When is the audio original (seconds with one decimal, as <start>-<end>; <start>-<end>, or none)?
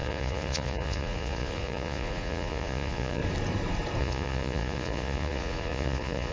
3.2-4.0